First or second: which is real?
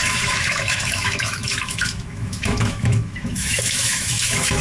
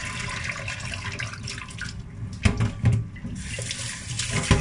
second